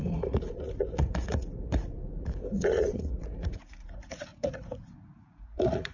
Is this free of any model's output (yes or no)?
no